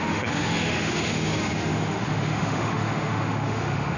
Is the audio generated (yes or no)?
yes